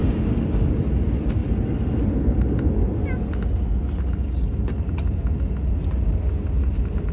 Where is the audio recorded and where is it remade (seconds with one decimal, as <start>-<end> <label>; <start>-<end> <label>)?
0.0-0.8 remade; 0.8-7.1 recorded